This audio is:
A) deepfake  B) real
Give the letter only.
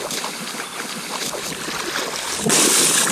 B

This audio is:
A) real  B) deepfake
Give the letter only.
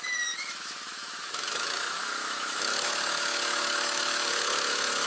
B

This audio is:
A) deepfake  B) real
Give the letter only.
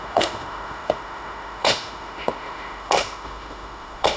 A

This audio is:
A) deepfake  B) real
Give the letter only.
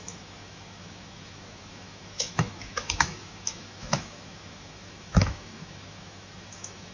A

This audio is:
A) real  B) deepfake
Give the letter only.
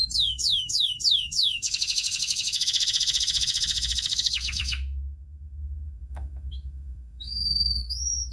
B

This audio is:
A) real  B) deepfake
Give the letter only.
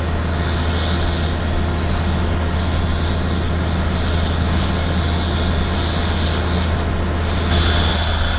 A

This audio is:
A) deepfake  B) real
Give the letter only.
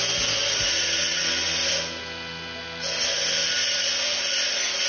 B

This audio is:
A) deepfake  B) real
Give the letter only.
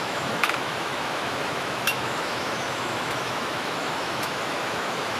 A